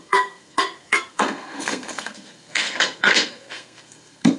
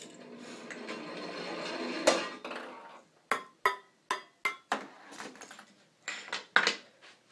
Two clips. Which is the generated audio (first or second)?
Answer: first